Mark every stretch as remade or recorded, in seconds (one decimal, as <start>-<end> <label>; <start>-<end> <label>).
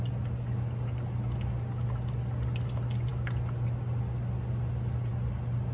0.0-5.7 recorded